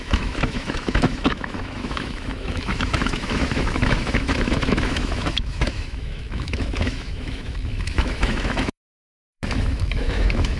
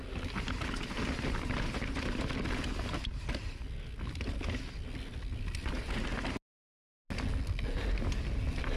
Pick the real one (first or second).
second